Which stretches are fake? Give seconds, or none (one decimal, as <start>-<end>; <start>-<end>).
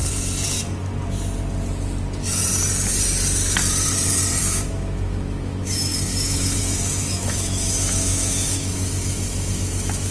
4.4-10.1